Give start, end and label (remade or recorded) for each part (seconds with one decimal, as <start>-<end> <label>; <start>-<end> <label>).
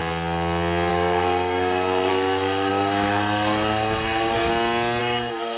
0.0-0.9 recorded; 0.9-4.5 remade; 4.5-5.0 recorded; 5.0-5.6 remade